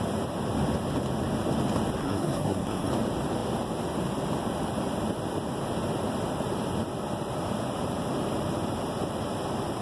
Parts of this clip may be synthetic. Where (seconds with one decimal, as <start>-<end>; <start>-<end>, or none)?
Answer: 2.0-2.9